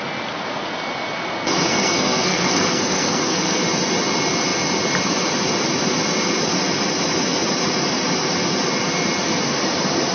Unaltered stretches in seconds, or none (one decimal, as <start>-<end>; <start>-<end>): 0.0-1.7; 3.6-10.1